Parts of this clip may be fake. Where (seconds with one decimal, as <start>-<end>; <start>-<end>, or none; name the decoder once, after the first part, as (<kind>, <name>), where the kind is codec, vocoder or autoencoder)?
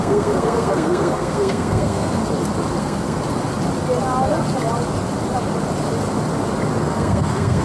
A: 0.0-2.2 (codec, SNAC); 2.8-3.2; 6.8-7.6